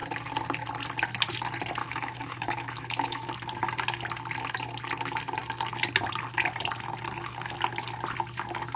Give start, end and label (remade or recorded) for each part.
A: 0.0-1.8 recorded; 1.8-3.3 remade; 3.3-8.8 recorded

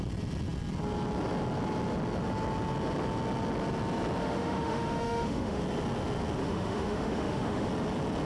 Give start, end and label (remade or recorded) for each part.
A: 0.0-4.2 recorded; 4.2-5.6 remade; 5.6-6.4 recorded; 6.4-7.7 remade; 7.7-8.3 recorded

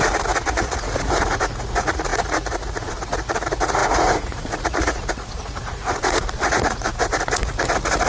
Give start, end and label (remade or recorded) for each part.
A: 0.0-8.1 remade

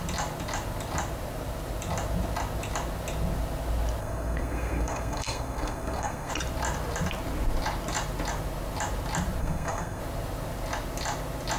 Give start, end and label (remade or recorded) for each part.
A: 0.0-4.0 recorded; 4.0-6.3 remade; 6.3-9.4 recorded; 9.4-10.0 remade; 10.0-11.6 recorded

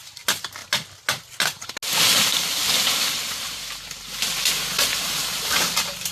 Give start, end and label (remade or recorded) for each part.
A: 0.0-4.9 recorded; 4.9-6.1 remade